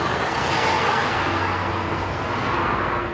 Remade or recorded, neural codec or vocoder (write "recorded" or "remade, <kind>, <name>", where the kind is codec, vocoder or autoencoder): remade, codec, SNAC